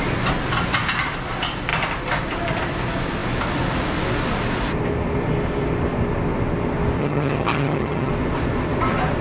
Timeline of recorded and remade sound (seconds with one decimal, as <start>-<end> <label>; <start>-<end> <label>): 0.0-7.0 recorded; 7.0-8.1 remade; 8.1-9.2 recorded